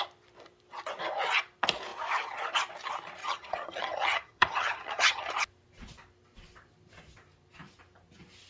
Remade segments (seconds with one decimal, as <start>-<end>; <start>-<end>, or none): 3.2-5.3